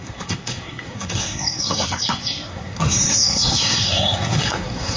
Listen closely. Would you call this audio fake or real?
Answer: fake